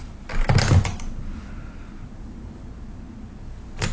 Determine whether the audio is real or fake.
real